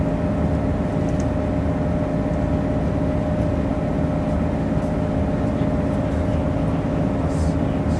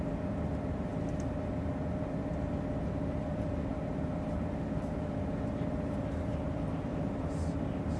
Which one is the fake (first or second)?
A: second